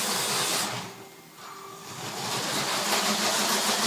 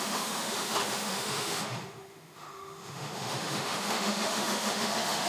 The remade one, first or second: second